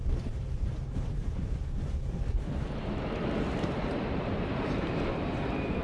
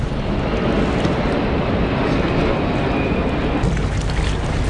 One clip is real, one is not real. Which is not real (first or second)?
first